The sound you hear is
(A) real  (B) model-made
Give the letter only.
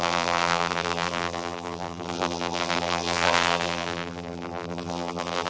B